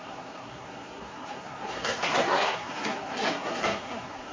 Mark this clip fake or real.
fake